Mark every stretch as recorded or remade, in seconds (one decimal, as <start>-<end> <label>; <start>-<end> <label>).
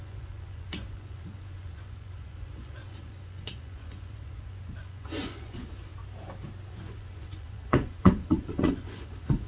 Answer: 0.0-5.9 remade; 5.9-6.7 recorded; 6.7-9.5 remade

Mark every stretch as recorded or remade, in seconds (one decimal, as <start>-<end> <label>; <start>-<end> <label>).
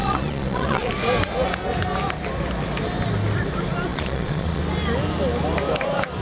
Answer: 0.0-0.9 remade; 0.9-3.9 recorded; 3.9-4.6 remade; 4.6-6.2 recorded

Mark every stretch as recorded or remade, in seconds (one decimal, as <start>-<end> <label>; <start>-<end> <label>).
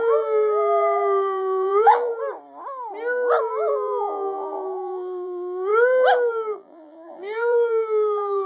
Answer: 0.0-2.1 remade; 2.1-3.4 recorded; 3.4-5.7 remade; 5.7-6.3 recorded; 6.3-8.5 remade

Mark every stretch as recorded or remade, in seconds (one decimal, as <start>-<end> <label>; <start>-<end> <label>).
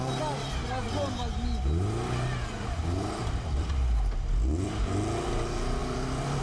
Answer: 0.0-2.8 recorded; 2.8-3.7 remade; 3.7-5.8 recorded; 5.8-6.4 remade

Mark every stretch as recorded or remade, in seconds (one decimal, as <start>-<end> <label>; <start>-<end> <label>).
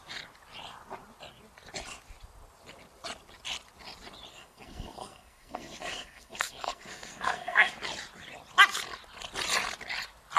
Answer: 0.0-4.3 recorded; 4.3-7.7 remade; 7.7-10.4 recorded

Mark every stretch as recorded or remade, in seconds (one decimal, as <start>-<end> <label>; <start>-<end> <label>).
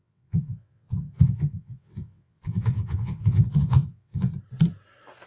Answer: 0.0-4.3 remade; 4.3-5.3 recorded